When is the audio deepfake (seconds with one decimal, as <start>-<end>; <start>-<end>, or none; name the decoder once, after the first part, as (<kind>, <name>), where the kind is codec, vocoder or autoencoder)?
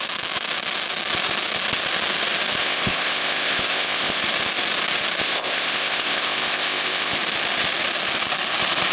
2.6-4.2 (codec, ZipCodec); 5.2-7.1